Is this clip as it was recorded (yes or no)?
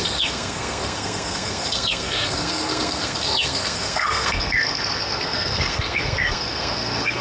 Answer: no